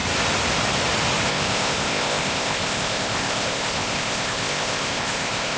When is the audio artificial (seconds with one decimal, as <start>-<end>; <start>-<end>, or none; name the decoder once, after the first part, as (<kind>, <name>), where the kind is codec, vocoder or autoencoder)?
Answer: 1.3-5.6 (codec, ZipCodec)